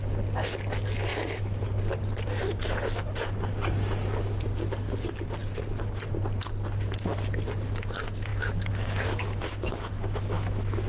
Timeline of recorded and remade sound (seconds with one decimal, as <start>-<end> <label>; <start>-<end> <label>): 0.0-8.3 recorded; 8.3-10.9 remade